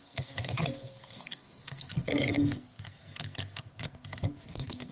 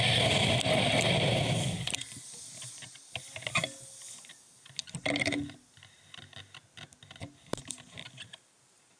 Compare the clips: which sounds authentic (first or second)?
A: second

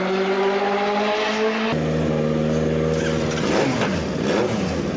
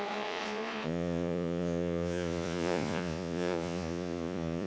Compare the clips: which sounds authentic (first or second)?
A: first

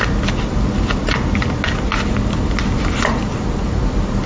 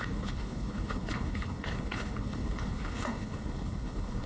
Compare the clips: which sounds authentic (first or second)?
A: first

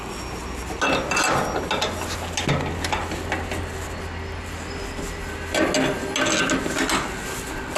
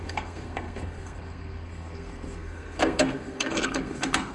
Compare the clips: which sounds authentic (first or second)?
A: first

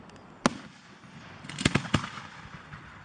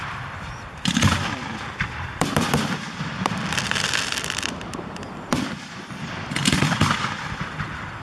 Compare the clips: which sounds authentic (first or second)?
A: first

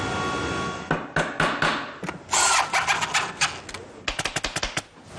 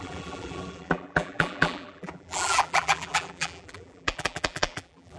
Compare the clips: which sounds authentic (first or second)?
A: first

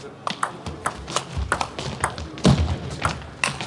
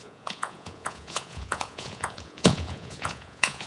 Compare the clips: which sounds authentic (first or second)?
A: first